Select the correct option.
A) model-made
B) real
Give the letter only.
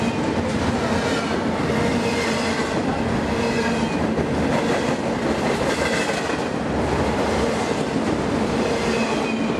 B